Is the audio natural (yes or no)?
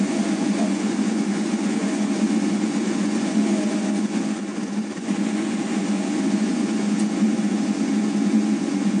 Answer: no